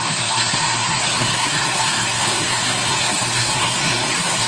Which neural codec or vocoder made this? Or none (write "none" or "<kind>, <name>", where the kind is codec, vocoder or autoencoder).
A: codec, SNAC